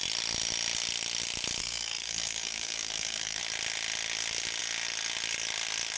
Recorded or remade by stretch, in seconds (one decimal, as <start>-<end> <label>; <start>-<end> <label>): 0.0-1.6 recorded; 1.6-3.4 remade; 3.4-6.0 recorded